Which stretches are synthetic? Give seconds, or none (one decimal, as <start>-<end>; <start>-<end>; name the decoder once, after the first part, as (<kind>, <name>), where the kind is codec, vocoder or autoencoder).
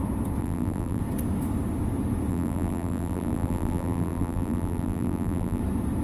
0.4-1.0 (vocoder, BigVGAN v2); 2.3-5.6